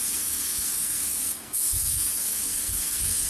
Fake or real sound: fake